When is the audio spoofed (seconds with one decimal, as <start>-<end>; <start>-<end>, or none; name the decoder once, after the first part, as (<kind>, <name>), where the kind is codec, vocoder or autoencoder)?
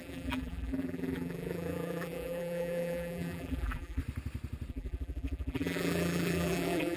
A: 0.0-4.0 (vocoder, BigVGAN v2); 4.7-7.0